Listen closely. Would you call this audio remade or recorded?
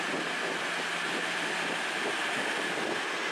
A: recorded